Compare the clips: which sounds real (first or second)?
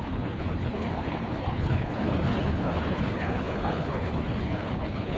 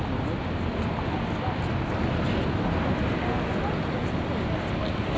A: second